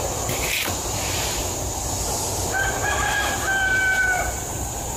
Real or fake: fake